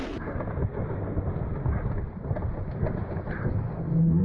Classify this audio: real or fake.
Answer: real